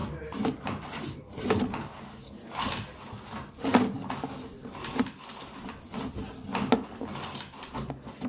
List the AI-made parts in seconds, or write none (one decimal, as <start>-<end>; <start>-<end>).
0.0-1.5